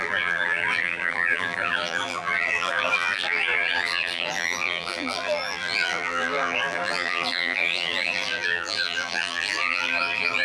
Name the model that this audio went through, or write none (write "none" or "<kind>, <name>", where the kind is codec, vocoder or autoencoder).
vocoder, BigVGAN v2